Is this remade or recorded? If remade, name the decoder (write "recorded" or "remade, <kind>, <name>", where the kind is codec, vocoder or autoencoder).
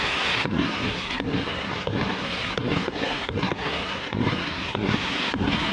remade, codec, SNAC